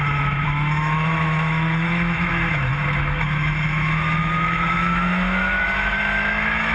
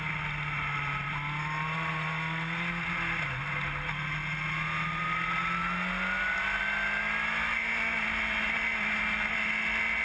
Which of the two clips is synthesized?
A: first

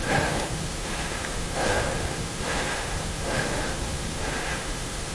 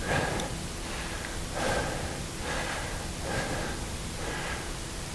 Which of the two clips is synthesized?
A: first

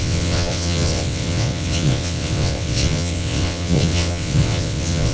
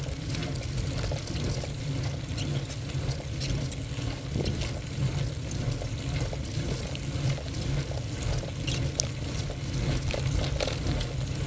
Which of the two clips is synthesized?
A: first